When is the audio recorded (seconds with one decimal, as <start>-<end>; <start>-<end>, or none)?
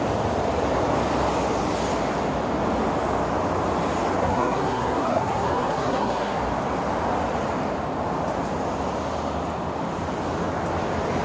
0.0-4.2; 6.4-11.2